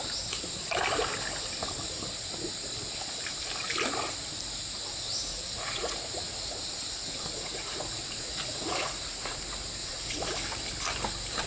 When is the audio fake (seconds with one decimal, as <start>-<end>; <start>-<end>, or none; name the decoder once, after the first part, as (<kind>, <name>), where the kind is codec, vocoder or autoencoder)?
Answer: 5.3-9.4 (vocoder, Vocos); 9.8-10.3